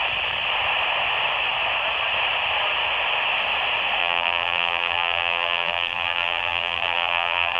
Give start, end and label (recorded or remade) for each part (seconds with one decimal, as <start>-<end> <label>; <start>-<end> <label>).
0.0-4.0 recorded; 4.0-7.6 remade